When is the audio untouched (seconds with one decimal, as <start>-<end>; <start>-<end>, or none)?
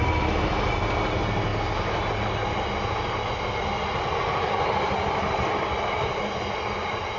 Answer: 0.0-7.2